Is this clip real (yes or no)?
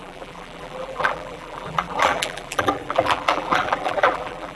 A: no